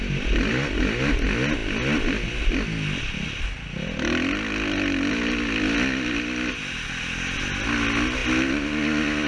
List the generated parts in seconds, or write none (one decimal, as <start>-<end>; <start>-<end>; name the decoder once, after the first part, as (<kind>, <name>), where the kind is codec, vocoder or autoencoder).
none